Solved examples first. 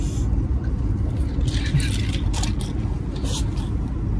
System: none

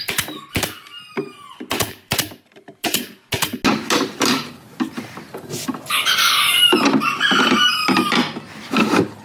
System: none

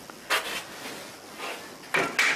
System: none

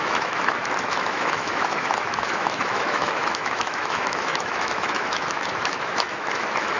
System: autoencoder, DAC-VAE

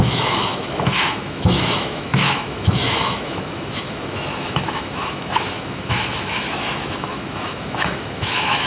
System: autoencoder, DAC-VAE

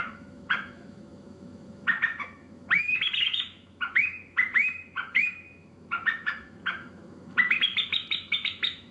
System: autoencoder, DAC-VAE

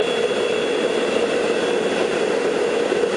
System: none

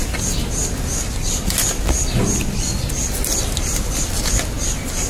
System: none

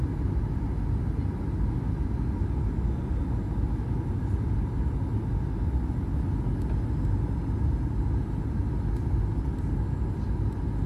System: none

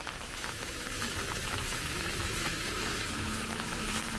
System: autoencoder, DAC-VAE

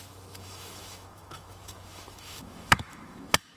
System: autoencoder, DAC-VAE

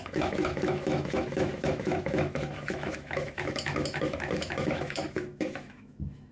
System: autoencoder, DAC-VAE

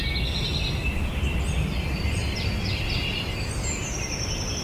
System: none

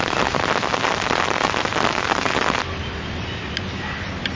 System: none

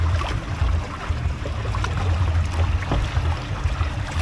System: none